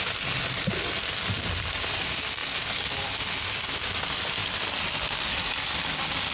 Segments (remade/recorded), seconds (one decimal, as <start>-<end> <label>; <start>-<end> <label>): 0.0-6.3 recorded